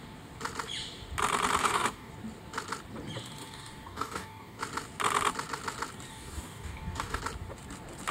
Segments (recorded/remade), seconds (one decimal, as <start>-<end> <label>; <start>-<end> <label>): 0.0-1.6 recorded; 1.6-2.1 remade; 2.1-3.4 recorded; 3.4-4.6 remade; 4.6-6.1 recorded; 6.1-7.2 remade; 7.2-8.1 recorded